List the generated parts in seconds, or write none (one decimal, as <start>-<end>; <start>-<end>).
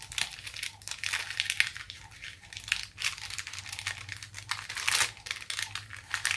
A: none